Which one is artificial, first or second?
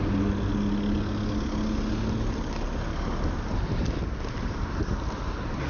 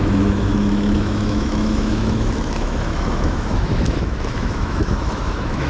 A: second